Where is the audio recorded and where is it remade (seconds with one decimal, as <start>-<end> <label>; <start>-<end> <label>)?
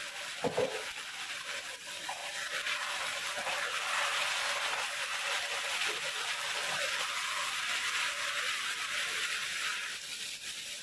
0.0-4.3 remade; 4.3-5.6 recorded; 5.6-10.8 remade